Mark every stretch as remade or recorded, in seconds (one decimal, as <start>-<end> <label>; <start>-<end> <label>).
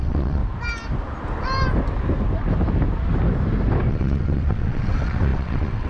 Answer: 0.0-0.4 remade; 0.4-3.9 recorded; 3.9-5.9 remade